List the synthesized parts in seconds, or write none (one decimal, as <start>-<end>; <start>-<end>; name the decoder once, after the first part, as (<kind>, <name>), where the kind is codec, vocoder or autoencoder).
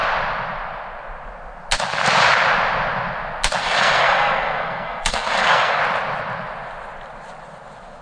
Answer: 3.6-5.8 (codec, SNAC)